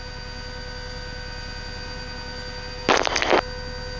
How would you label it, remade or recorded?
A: recorded